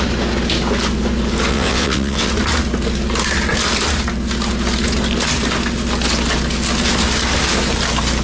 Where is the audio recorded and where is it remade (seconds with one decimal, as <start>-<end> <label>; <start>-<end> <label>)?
0.0-1.5 recorded; 1.5-2.3 remade; 2.3-8.2 recorded